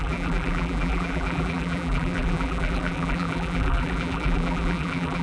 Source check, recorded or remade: remade